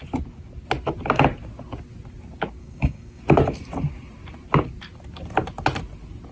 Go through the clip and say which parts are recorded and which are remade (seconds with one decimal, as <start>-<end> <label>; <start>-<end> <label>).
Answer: 0.0-2.6 recorded; 2.6-3.2 remade; 3.2-6.3 recorded